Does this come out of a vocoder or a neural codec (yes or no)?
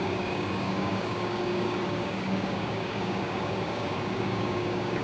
yes